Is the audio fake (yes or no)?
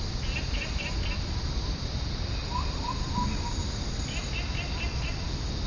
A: no